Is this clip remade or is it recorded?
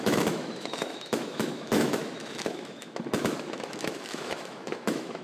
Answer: remade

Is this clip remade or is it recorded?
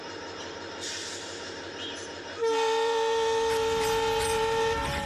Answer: remade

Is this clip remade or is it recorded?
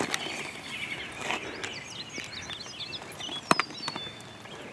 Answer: recorded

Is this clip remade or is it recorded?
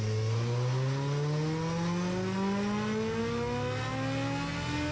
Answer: recorded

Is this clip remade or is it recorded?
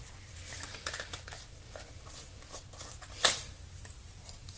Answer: recorded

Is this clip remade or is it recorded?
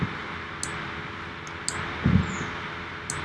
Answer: recorded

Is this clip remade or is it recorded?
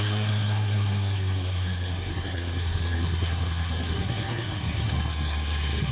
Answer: remade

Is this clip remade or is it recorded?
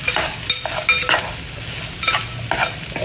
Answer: recorded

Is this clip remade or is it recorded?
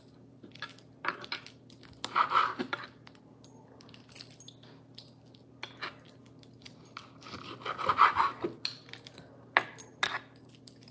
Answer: recorded